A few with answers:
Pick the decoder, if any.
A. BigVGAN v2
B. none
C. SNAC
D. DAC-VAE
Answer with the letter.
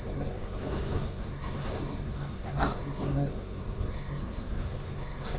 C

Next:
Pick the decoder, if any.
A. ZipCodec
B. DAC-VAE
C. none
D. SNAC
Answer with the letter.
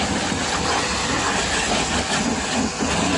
C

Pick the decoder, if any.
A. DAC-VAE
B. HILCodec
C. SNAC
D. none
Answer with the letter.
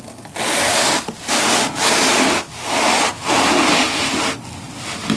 D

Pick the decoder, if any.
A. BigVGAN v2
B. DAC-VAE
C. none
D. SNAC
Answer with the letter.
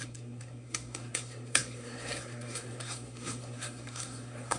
D